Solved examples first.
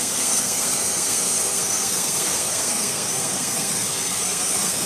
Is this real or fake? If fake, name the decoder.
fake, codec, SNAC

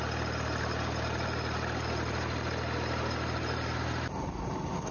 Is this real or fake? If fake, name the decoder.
real